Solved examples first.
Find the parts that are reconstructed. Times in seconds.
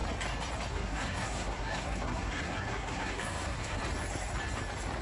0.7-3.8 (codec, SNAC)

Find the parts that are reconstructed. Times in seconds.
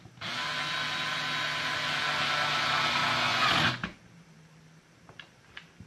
3.3-4.0 (vocoder, Vocos)